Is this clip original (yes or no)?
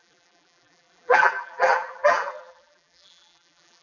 no